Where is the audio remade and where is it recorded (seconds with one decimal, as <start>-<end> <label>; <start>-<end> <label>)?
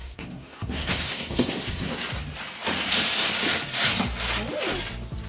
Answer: 0.0-1.9 remade; 1.9-5.3 recorded